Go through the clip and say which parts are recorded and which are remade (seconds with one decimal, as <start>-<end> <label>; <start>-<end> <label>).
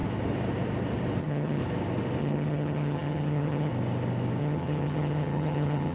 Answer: 0.0-1.2 recorded; 1.2-1.6 remade; 1.6-2.2 recorded; 2.2-3.7 remade; 3.7-4.4 recorded; 4.4-5.9 remade